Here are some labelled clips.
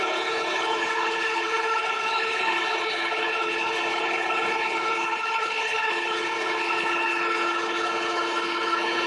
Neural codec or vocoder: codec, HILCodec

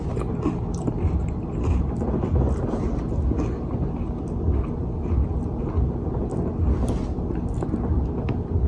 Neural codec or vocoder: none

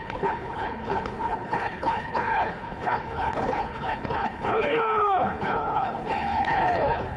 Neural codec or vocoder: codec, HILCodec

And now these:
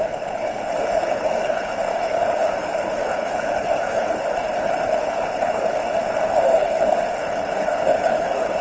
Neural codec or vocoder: codec, HILCodec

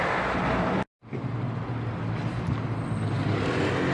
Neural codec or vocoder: none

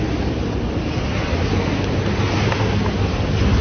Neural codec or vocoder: none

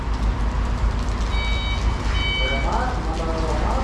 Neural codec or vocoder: none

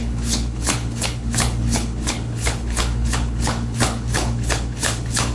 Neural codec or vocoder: codec, HILCodec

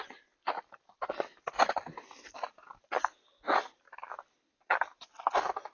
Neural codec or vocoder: none